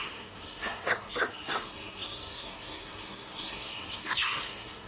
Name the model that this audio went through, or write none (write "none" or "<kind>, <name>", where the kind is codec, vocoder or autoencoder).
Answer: codec, SNAC